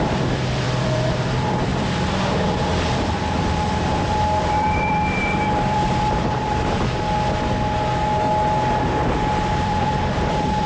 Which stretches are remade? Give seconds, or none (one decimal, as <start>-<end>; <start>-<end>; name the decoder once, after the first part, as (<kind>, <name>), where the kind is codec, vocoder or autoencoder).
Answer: 0.0-6.5 (vocoder, BigVGAN v2); 9.5-10.7